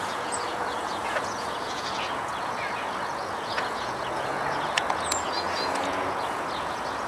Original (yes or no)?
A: no